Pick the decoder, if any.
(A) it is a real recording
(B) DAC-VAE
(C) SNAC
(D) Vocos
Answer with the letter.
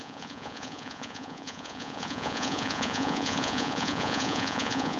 D